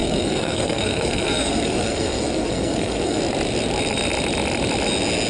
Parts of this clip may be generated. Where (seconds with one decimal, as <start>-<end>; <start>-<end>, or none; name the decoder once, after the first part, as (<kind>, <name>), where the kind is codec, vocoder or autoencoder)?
0.0-3.2 (codec, SNAC)